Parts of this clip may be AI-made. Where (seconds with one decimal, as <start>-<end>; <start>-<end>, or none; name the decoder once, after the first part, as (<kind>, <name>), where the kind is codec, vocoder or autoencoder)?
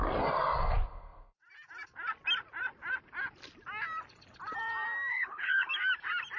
5.1-5.7 (codec, HILCodec)